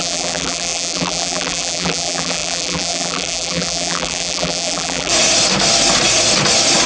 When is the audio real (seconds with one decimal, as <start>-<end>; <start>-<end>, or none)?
5.1-6.9